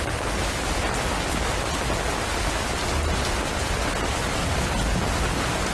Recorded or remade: recorded